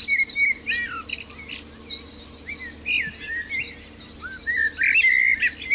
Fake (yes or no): no